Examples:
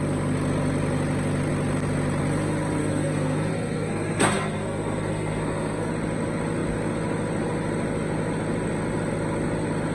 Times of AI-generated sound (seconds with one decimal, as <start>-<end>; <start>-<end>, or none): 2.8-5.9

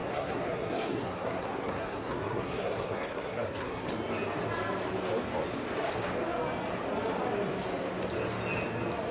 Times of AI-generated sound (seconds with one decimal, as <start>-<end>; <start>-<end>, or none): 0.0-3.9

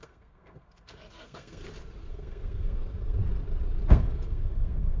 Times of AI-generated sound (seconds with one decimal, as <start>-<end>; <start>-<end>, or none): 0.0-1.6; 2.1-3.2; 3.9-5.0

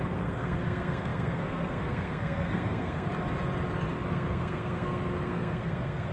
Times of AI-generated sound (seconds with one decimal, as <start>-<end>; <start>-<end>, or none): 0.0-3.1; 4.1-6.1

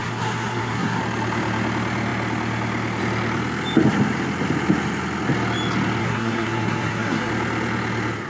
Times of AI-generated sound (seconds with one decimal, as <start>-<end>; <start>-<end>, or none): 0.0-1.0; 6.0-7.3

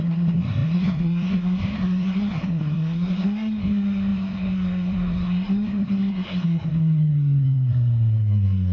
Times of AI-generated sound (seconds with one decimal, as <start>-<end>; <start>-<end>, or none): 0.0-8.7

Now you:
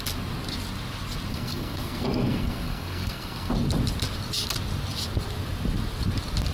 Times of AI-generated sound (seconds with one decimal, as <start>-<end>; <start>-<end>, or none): 1.3-3.5

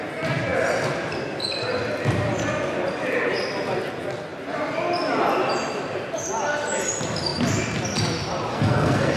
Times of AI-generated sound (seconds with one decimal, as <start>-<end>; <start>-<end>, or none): 8.5-9.2